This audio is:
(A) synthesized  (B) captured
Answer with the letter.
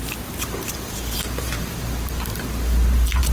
A